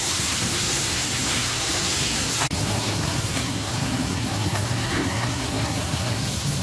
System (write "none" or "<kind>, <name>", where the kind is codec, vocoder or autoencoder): codec, SNAC